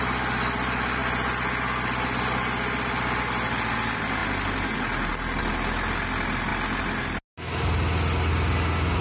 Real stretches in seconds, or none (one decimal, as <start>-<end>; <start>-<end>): 0.0-9.0